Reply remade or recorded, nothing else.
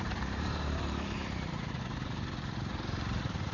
remade